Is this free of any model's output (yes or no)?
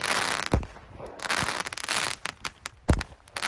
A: yes